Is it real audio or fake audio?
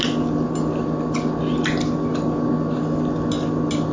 real